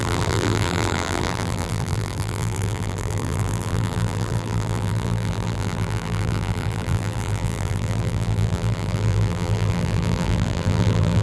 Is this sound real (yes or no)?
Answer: no